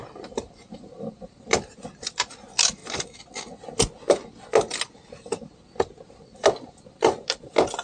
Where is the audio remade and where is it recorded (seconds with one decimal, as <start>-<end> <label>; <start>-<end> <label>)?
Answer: 0.0-7.8 recorded